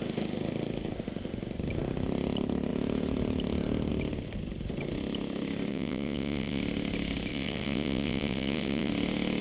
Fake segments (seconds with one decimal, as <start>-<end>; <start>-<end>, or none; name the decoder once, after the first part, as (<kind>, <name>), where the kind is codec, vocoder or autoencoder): 5.7-6.6 (vocoder, WaveNeXt); 7.3-8.9